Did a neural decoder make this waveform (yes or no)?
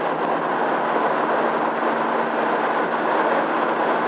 no